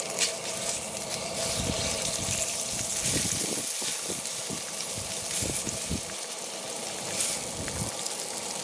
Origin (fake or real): real